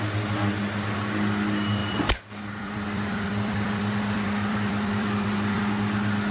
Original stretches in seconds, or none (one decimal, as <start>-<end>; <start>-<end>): 0.0-1.8; 5.6-6.3